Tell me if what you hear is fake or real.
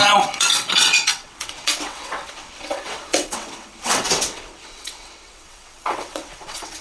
fake